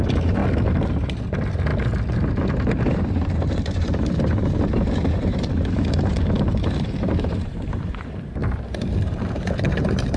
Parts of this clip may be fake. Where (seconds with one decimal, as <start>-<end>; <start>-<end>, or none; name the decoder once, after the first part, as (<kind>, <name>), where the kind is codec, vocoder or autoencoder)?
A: 0.0-0.4 (vocoder, BigVGAN v2); 0.9-1.7; 2.9-10.2